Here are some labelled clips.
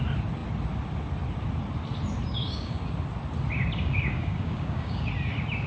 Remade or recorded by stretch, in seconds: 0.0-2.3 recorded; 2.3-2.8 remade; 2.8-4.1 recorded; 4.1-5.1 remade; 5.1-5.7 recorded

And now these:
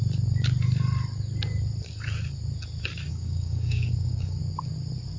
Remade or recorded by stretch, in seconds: 0.0-3.1 recorded; 3.1-4.4 remade; 4.4-5.2 recorded

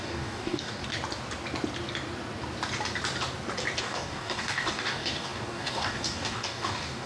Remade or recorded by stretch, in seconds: 0.0-0.8 remade; 0.8-3.8 recorded; 3.8-7.1 remade